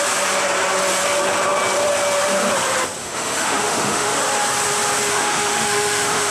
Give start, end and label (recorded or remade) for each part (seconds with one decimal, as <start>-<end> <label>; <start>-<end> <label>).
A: 0.0-3.0 recorded; 3.0-4.2 remade; 4.2-5.1 recorded; 5.1-6.3 remade